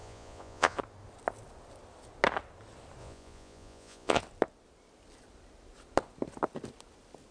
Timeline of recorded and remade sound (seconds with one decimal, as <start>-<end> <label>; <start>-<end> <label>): 0.0-0.8 remade; 0.8-3.0 recorded; 3.0-4.2 remade; 4.2-7.3 recorded

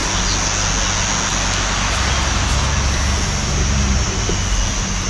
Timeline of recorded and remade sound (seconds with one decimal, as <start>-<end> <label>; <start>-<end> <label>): 0.0-5.1 recorded

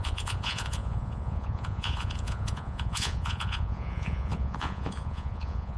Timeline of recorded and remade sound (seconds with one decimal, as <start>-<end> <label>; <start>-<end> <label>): 0.0-5.8 remade

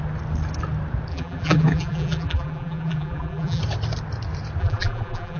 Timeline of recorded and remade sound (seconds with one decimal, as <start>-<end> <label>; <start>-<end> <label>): 0.0-1.1 recorded; 1.1-3.6 remade; 3.6-4.6 recorded; 4.6-5.4 remade

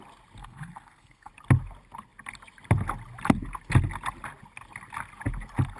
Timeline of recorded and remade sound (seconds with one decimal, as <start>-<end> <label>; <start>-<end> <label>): 0.0-0.4 recorded; 0.4-1.3 remade; 1.3-5.8 recorded

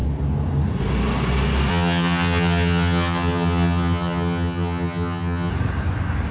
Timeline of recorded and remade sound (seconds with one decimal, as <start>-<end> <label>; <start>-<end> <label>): 0.0-1.7 recorded; 1.7-5.5 remade; 5.5-6.3 recorded

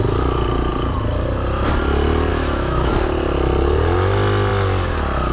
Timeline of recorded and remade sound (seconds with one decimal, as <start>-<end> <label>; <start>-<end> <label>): 0.0-2.3 recorded; 2.3-2.9 remade; 2.9-5.3 recorded